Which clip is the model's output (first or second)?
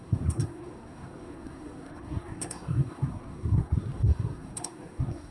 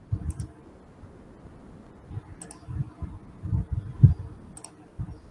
first